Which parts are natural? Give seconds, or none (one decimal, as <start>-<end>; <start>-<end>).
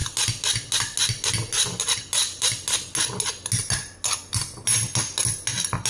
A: 0.0-5.9